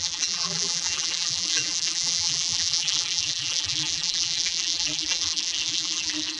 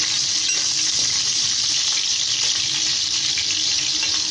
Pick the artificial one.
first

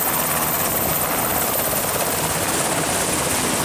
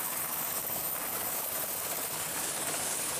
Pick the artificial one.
second